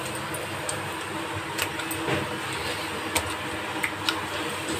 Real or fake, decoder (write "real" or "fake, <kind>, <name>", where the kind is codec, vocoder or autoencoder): real